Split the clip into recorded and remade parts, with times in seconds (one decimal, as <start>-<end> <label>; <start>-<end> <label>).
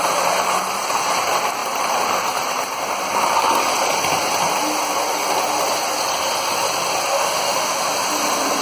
0.0-7.1 recorded; 7.1-7.9 remade; 7.9-8.6 recorded